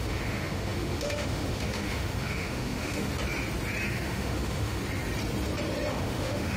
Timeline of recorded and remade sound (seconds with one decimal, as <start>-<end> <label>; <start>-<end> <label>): 0.0-3.1 remade; 3.1-3.9 recorded; 3.9-4.8 remade; 4.8-5.9 recorded; 5.9-6.6 remade